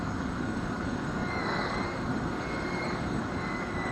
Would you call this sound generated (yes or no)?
yes